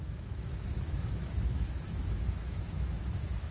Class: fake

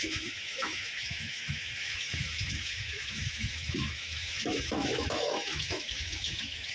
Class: fake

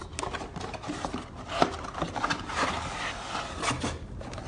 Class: real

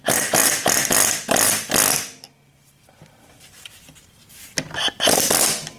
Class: real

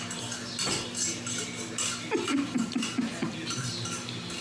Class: real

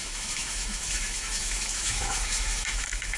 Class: fake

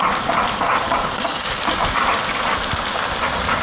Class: real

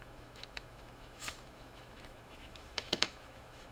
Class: fake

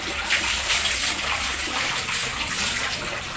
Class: real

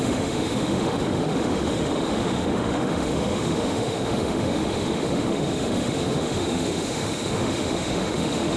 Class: fake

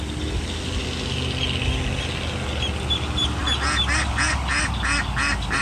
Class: real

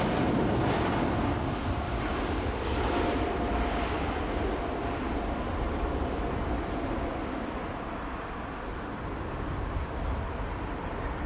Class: real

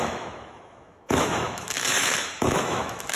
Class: fake